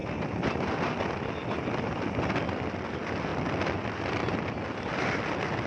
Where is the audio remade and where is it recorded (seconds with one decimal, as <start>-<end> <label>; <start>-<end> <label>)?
0.0-5.7 recorded